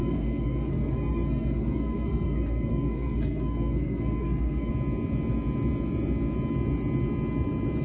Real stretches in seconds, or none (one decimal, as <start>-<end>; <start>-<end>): 4.7-7.8